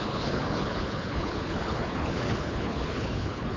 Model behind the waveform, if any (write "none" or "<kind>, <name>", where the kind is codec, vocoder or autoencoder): codec, HILCodec